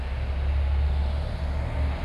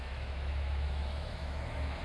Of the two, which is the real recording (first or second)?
first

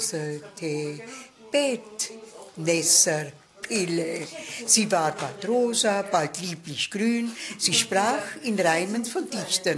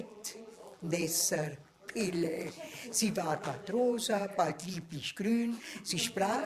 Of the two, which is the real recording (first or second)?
first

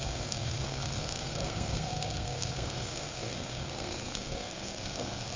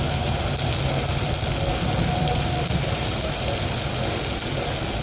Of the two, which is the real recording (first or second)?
second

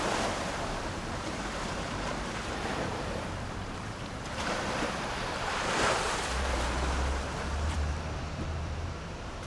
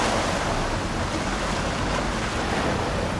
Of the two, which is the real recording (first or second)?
second